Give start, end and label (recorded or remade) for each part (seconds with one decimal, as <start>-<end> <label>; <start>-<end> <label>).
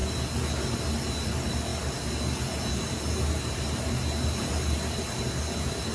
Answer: 0.0-5.9 recorded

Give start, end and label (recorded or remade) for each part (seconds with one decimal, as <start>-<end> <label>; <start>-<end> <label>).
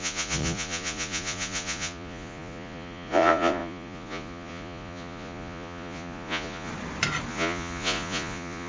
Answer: 0.0-6.7 remade; 6.7-7.3 recorded; 7.3-8.7 remade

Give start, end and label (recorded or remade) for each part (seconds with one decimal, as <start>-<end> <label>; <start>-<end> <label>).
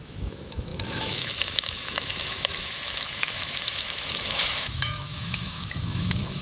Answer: 0.0-6.4 remade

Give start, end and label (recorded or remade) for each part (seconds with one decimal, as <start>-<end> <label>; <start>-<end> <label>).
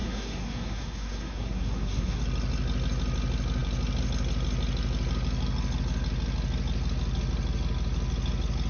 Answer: 0.0-2.2 remade; 2.2-8.7 recorded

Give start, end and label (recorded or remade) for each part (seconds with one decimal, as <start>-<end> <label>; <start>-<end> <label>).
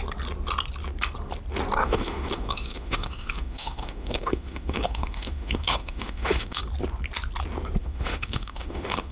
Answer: 0.0-1.8 recorded; 1.8-6.6 remade; 6.6-7.8 recorded; 7.8-9.1 remade